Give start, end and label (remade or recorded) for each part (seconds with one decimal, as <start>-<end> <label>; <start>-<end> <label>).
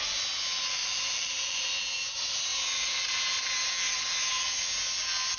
0.0-0.8 recorded; 0.8-1.7 remade; 1.7-5.4 recorded